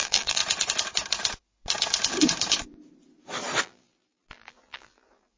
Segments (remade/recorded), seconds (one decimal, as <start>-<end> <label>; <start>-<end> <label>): 0.0-0.4 remade; 0.4-3.6 recorded; 3.6-5.4 remade